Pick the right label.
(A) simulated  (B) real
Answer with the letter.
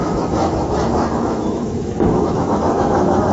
A